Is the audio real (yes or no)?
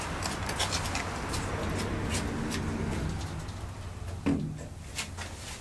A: yes